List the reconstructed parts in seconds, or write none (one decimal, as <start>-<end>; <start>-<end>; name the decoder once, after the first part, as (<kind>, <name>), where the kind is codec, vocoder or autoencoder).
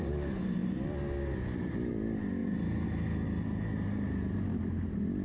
none